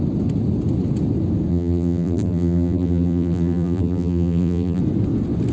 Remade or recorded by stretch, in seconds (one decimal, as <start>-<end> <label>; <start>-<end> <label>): 0.0-1.5 recorded; 1.5-4.8 remade; 4.8-5.5 recorded